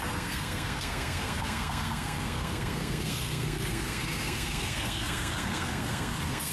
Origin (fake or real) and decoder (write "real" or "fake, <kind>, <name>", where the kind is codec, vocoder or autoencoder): fake, codec, SNAC